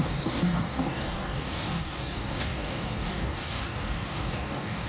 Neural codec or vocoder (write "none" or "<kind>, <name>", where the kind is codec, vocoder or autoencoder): codec, DAC